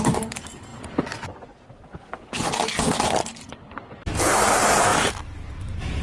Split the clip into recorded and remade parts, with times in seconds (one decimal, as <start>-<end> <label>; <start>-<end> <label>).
0.0-0.7 remade; 0.7-4.3 recorded; 4.3-6.0 remade